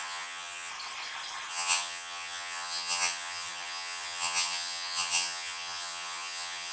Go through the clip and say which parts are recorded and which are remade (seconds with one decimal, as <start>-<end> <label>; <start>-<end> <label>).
0.0-0.7 remade; 0.7-1.5 recorded; 1.5-6.7 remade